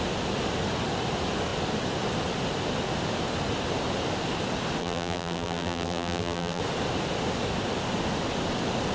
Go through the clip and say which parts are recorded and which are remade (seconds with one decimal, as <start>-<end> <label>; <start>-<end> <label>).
0.0-4.8 recorded; 4.8-6.6 remade; 6.6-8.9 recorded